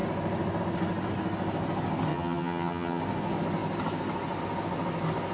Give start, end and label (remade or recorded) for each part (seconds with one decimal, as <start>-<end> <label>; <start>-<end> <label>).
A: 0.0-2.1 recorded; 2.1-3.0 remade; 3.0-5.3 recorded